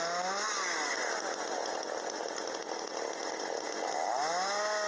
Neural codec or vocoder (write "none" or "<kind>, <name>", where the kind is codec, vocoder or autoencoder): none